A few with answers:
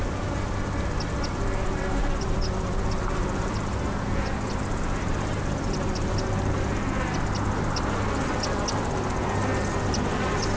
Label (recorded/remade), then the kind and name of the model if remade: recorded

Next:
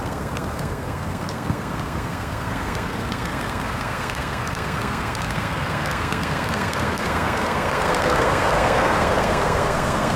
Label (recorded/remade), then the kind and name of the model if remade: remade, codec, SNAC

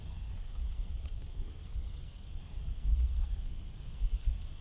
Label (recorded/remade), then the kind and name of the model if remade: remade, codec, SNAC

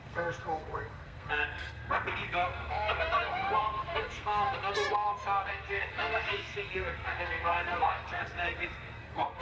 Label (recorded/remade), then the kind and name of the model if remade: remade, codec, SNAC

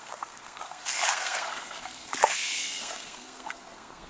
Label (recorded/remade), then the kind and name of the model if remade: remade, codec, SNAC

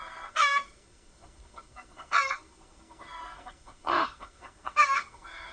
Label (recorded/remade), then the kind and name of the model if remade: remade, codec, SNAC